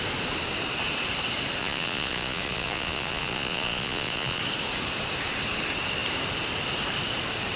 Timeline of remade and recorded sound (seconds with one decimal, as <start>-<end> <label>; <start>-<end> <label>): 0.0-1.6 recorded; 1.6-4.4 remade; 4.4-7.6 recorded